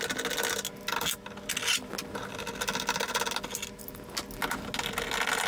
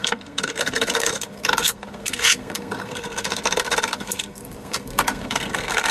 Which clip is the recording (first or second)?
first